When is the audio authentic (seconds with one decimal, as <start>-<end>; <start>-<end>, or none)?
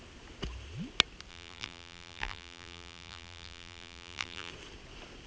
0.0-1.3; 4.5-5.3